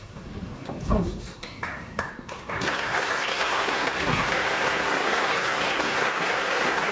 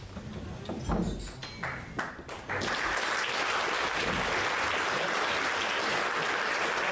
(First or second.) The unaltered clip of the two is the second